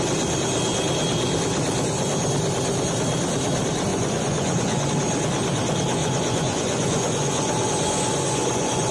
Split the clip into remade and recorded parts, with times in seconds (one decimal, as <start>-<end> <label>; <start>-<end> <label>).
0.0-3.9 recorded; 3.9-4.9 remade; 4.9-6.0 recorded; 6.0-8.9 remade